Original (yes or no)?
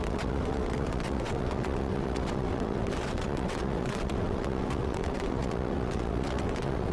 no